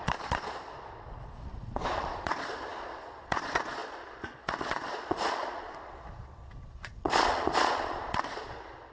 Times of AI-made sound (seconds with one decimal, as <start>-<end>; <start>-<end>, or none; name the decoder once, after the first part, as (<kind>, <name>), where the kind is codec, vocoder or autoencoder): 0.0-8.9 (vocoder, Vocos)